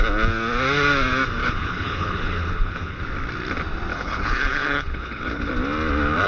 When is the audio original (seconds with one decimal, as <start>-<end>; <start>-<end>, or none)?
0.0-1.4; 3.0-3.9; 5.5-6.3